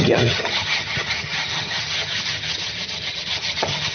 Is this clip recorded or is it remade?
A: remade